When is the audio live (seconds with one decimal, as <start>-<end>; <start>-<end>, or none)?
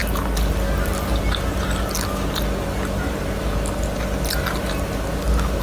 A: 0.0-5.6